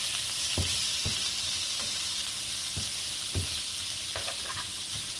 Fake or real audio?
real